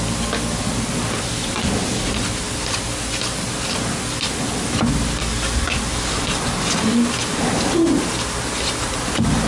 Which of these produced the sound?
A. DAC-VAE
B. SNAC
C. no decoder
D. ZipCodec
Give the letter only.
C